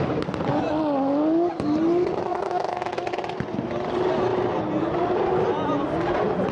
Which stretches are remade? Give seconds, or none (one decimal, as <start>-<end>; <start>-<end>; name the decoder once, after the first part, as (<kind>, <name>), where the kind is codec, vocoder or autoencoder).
2.3-2.8 (autoencoder, DAC-VAE)

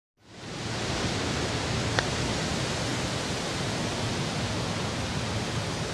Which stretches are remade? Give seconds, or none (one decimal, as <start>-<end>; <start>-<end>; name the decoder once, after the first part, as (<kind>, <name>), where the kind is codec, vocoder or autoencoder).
none

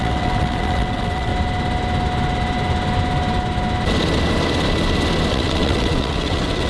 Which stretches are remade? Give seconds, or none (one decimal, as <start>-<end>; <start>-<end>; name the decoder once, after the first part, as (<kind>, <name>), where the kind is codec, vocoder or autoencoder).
0.0-1.3 (vocoder, WaveNeXt); 5.3-6.7

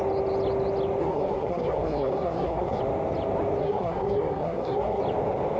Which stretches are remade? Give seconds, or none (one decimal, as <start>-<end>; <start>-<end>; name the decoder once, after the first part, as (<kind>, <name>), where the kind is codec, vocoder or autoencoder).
1.0-2.8 (codec, SNAC); 3.6-5.0

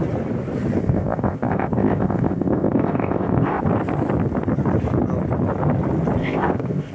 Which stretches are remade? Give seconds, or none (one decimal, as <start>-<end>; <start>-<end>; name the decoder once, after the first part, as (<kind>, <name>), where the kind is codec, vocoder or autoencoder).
0.8-3.6 (codec, ZipCodec); 6.2-6.9

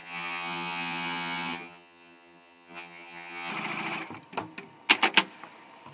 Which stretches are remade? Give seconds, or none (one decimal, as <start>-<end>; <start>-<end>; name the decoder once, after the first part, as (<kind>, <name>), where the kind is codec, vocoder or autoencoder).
0.0-3.5 (vocoder, HiFi-GAN)

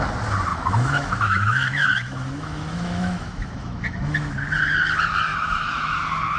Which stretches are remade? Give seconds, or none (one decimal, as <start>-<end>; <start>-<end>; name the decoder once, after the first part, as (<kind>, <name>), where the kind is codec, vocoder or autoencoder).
0.5-4.3 (autoencoder, DAC-VAE); 5.3-5.9

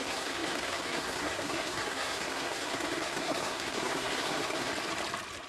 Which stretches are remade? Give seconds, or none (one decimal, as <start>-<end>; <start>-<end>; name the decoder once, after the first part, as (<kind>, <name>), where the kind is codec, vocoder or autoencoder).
0.0-4.7 (codec, SNAC)